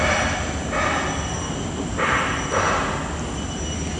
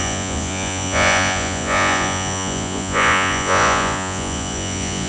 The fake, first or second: second